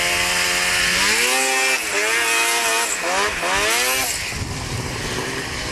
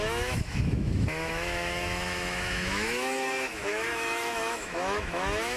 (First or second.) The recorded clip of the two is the first